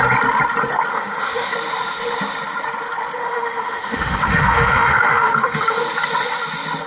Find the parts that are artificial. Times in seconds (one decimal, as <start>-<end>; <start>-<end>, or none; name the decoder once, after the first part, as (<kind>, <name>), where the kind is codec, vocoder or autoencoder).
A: 0.9-1.5 (autoencoder, DAC-VAE); 3.2-5.8